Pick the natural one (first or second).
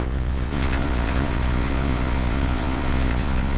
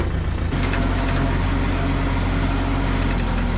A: second